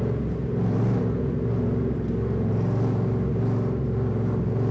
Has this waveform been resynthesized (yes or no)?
no